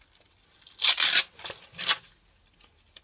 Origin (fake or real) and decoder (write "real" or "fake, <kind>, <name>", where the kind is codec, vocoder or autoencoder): real